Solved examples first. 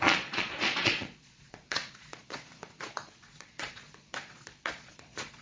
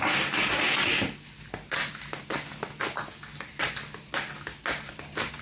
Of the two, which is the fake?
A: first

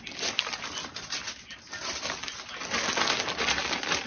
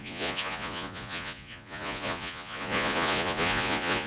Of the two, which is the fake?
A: second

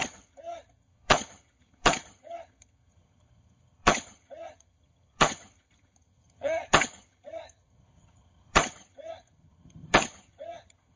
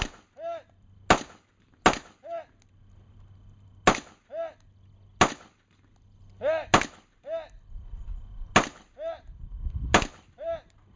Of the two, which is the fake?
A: first